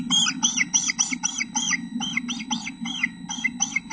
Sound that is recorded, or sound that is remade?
recorded